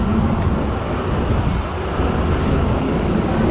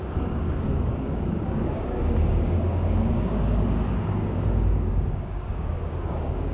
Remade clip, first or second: second